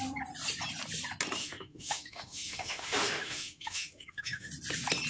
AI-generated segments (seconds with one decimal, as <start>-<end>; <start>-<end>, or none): 1.4-4.5